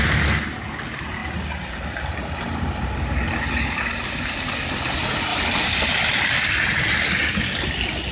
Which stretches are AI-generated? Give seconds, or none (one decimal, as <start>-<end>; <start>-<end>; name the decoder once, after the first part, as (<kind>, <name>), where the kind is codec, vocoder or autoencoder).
5.3-6.1 (vocoder, BigVGAN v2)

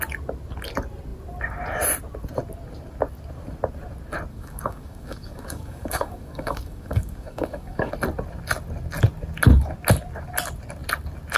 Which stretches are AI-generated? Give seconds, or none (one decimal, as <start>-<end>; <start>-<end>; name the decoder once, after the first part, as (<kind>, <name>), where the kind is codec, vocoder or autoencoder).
4.3-7.9 (codec, DAC)

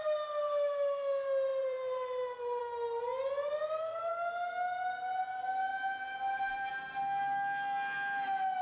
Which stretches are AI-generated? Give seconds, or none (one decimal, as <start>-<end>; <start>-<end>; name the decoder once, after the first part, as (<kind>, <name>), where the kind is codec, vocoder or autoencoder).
1.5-2.6 (vocoder, BigVGAN v2); 5.7-6.7

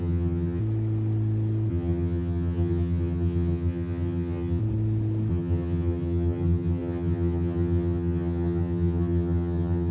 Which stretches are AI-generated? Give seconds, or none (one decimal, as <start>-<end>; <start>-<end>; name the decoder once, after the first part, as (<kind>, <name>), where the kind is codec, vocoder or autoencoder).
0.0-0.6 (vocoder, HiFi-GAN); 1.7-4.6; 5.3-9.9

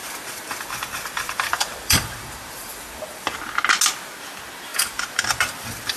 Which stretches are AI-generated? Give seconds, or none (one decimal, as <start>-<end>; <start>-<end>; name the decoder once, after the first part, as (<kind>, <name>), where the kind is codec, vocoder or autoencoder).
0.0-3.4 (vocoder, BigVGAN v2); 4.7-6.0